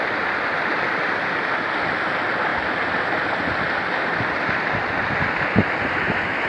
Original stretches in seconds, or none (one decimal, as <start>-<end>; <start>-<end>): 0.0-2.5; 4.9-6.5